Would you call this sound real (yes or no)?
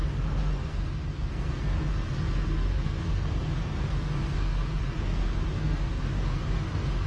no